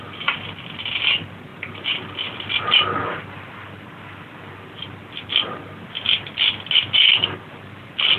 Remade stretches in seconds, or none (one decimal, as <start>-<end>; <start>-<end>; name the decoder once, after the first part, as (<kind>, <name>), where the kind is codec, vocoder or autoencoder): none

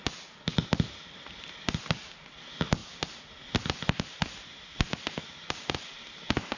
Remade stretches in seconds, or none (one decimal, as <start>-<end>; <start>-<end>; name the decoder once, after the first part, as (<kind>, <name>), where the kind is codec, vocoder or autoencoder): 2.8-4.9 (vocoder, BigVGAN v2)

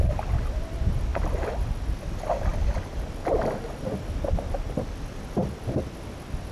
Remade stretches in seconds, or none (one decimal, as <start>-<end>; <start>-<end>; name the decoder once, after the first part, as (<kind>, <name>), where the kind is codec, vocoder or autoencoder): none

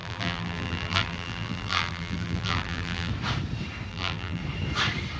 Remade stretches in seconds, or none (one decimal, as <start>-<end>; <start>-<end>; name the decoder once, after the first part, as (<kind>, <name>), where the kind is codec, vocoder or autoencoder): 0.0-3.1 (vocoder, BigVGAN v2); 3.9-4.4

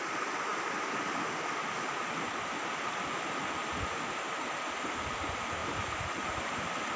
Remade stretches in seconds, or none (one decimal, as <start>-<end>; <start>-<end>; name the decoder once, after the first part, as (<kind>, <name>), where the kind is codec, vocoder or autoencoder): 5.6-6.6 (vocoder, BigVGAN v2)

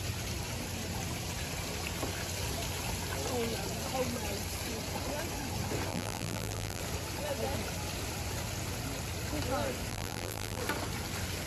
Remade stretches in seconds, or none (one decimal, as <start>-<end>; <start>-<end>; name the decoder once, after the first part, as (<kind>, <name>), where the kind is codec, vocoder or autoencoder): 5.9-6.8 (vocoder, BigVGAN v2); 9.9-10.6

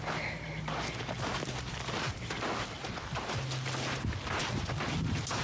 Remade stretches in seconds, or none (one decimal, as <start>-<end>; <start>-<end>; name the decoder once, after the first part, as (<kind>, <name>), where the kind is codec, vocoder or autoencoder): 1.3-2.6 (vocoder, BigVGAN v2)